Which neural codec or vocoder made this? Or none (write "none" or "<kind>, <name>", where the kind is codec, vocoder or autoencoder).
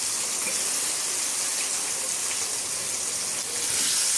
none